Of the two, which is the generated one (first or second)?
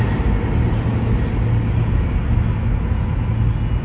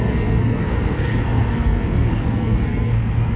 second